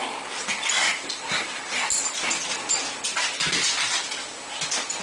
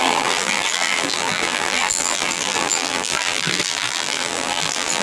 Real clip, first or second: first